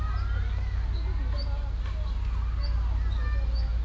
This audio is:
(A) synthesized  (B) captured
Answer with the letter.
B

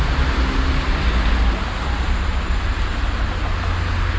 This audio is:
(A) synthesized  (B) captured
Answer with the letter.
B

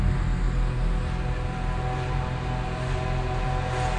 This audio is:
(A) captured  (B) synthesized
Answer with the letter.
A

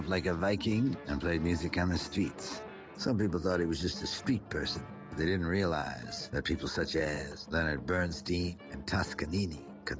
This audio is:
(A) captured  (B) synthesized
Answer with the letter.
A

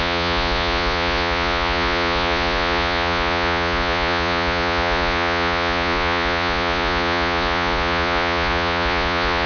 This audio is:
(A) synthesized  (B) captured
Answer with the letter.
A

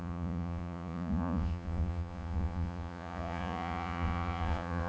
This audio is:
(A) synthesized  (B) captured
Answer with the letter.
A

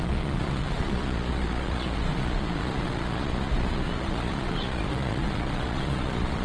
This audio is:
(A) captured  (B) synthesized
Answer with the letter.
B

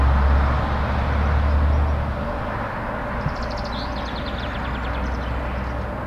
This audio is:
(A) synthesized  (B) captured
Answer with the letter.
B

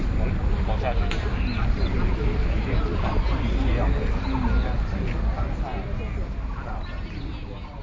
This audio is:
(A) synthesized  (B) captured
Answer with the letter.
B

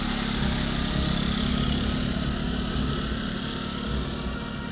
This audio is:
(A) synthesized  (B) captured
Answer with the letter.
B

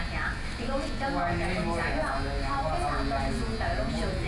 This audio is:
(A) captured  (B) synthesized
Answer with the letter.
A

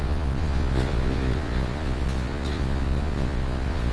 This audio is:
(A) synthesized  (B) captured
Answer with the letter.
A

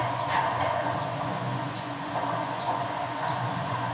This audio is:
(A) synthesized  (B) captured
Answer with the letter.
A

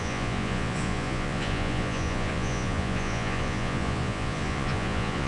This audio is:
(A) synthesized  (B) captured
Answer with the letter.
A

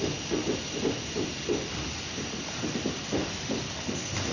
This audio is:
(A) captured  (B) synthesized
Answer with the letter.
A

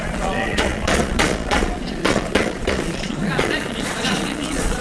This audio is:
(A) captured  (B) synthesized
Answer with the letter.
B